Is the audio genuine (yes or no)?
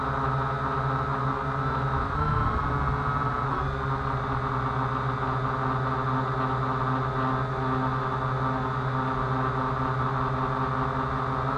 yes